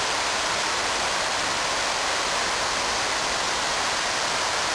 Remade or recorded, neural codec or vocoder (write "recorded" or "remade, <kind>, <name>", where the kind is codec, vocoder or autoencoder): recorded